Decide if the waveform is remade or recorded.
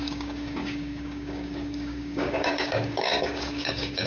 remade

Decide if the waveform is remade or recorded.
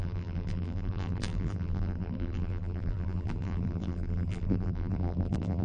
remade